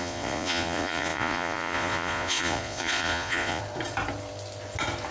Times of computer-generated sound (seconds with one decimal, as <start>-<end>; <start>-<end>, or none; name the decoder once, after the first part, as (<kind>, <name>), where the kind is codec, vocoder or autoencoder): 0.0-3.6 (vocoder, Vocos)